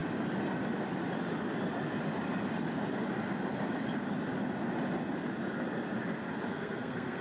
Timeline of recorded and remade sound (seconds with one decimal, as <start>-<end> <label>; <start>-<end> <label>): 0.0-6.5 recorded; 6.5-7.2 remade